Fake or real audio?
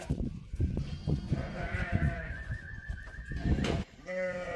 fake